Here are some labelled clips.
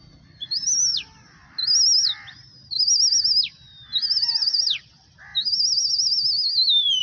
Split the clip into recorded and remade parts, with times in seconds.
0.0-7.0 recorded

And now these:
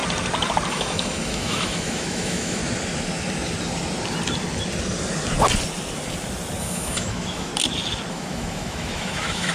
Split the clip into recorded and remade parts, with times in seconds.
0.0-0.7 recorded; 0.7-2.6 remade; 2.6-6.6 recorded; 6.6-7.5 remade; 7.5-8.1 recorded; 8.1-9.5 remade

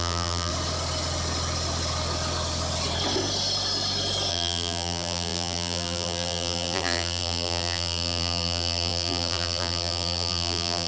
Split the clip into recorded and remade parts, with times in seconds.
0.0-0.5 remade; 0.5-4.3 recorded; 4.3-10.9 remade

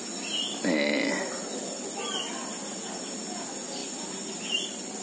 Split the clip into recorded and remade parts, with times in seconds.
0.0-5.0 recorded